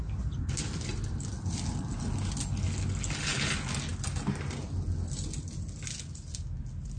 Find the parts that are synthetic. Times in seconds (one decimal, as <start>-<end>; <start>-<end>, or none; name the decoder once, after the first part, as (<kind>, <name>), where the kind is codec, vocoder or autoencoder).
none